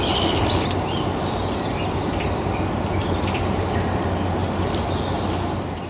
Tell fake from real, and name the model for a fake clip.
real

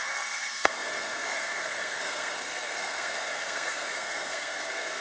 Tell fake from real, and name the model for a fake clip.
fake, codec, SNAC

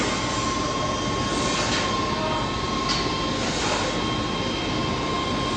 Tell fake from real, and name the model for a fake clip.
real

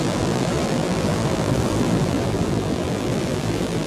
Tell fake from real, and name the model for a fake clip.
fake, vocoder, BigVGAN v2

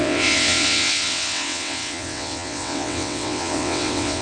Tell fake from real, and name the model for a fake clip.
fake, vocoder, WaveNeXt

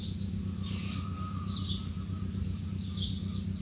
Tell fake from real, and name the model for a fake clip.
real